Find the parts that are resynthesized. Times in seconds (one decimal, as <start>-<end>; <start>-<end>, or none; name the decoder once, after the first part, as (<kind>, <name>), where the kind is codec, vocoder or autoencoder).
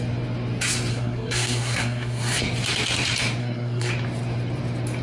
0.9-2.4 (codec, SNAC); 3.4-3.9